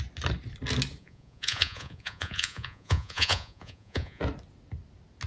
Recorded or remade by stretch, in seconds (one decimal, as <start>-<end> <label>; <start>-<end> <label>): 0.0-1.0 recorded; 1.0-4.2 remade; 4.2-5.3 recorded